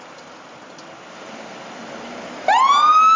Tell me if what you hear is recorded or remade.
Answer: recorded